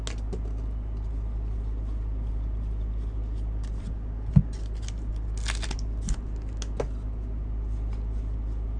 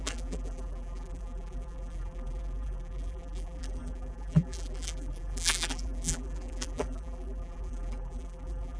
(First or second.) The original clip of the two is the first